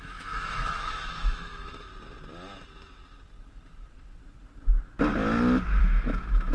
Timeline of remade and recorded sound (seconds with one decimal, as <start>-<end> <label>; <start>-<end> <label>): 0.0-1.9 remade; 1.9-5.8 recorded; 5.8-6.5 remade